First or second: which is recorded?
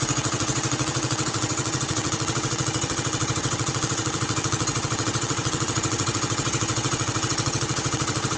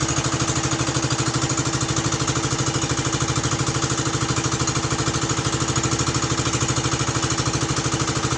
second